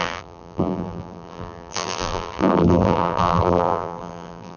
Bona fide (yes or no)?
no